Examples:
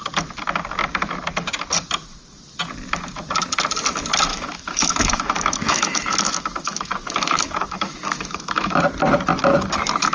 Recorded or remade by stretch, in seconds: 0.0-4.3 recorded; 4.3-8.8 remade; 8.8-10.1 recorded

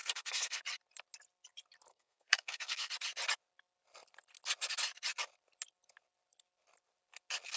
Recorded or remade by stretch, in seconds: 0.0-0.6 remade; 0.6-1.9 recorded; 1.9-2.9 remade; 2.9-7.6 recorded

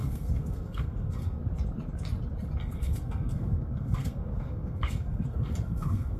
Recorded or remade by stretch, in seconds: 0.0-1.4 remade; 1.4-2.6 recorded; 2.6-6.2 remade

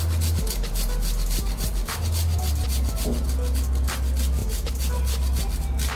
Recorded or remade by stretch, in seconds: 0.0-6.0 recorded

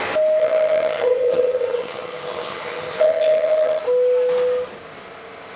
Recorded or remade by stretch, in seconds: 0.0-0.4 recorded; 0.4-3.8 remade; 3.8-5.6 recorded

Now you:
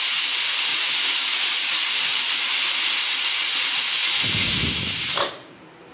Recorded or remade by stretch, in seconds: 0.0-5.9 recorded